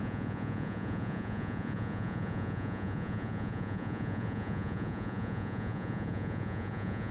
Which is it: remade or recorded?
remade